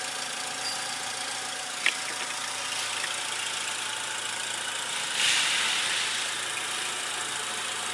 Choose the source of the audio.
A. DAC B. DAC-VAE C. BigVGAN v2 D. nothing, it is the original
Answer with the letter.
D